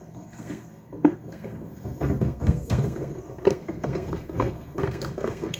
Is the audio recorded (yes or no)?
no